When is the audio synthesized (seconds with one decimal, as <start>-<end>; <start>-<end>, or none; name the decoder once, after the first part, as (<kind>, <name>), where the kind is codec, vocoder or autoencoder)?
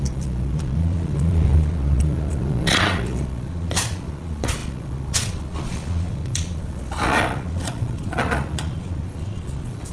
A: 0.0-9.9 (vocoder, Vocos)